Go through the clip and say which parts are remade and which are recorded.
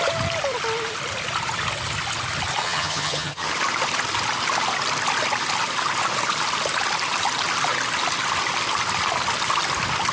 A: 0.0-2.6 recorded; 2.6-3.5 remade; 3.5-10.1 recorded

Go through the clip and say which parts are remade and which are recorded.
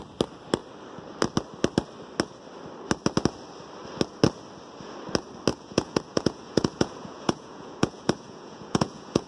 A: 0.0-5.5 recorded; 5.5-9.3 remade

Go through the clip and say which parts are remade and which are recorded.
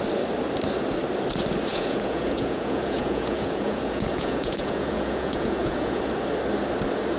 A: 0.0-1.7 recorded; 1.7-6.0 remade; 6.0-7.2 recorded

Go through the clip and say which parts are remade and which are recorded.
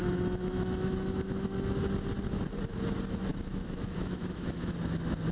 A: 0.0-1.8 remade; 1.8-3.3 recorded; 3.3-5.3 remade